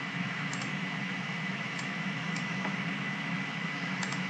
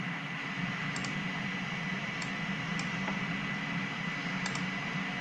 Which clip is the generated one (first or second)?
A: first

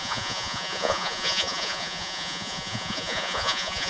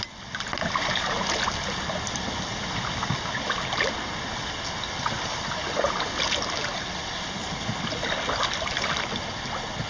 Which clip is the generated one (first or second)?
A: first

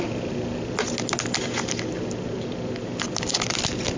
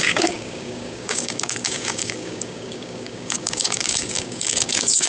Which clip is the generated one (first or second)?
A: second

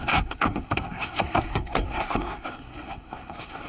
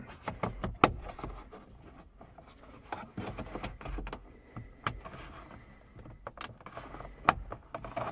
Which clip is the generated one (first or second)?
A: first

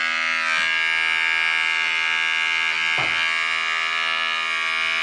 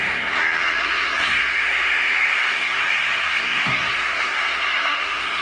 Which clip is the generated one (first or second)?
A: second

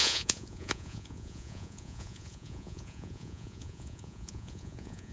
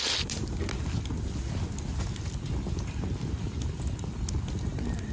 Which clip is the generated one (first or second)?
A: first